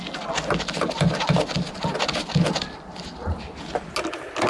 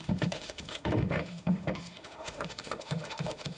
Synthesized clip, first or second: second